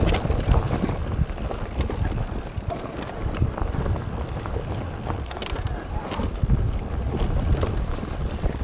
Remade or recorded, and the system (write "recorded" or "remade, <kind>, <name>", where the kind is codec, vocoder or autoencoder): recorded